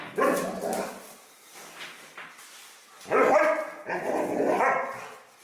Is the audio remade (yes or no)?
no